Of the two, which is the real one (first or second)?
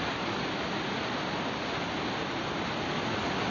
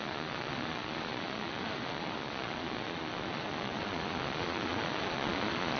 first